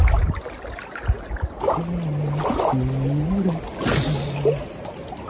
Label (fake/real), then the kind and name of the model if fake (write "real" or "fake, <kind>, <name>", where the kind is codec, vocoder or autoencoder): real